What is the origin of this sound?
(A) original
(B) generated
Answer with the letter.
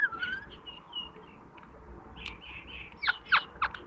A